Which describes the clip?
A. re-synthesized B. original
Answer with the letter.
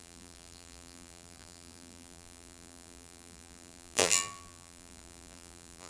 A